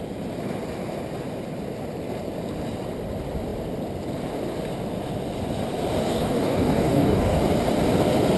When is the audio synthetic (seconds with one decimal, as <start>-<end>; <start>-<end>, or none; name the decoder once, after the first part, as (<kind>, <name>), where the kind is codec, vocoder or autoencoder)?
6.0-7.4 (codec, DAC)